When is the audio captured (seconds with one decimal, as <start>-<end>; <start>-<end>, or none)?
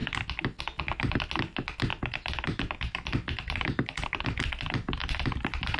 0.0-1.9; 4.2-5.0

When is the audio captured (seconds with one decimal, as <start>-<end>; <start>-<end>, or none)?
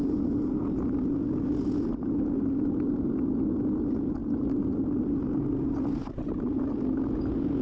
0.0-7.6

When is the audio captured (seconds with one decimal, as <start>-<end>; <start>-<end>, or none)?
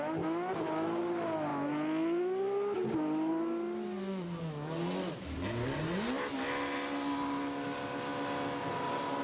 0.0-9.2